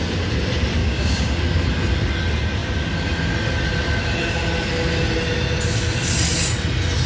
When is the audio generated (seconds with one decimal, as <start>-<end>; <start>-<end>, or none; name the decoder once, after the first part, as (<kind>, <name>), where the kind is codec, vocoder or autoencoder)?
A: 0.8-1.4 (codec, DAC)